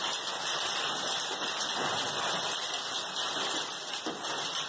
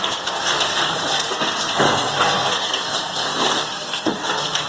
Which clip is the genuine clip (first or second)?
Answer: first